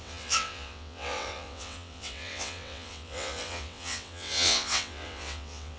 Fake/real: fake